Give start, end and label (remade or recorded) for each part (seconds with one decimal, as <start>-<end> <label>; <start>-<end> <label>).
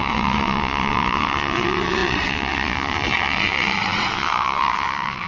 0.0-5.3 remade